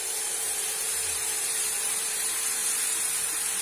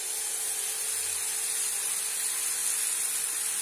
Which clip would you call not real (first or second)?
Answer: first